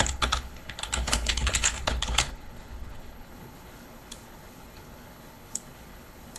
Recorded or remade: remade